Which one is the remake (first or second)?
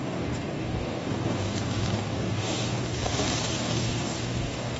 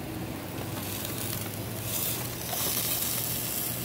first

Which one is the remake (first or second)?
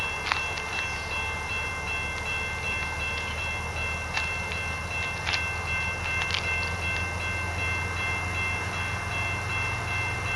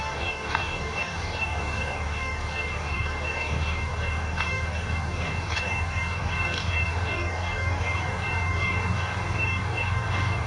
second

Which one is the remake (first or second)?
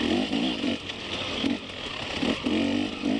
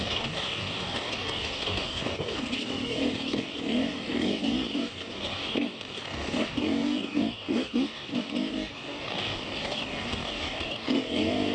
second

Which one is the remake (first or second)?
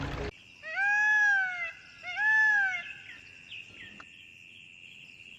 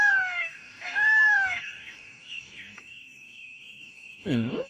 second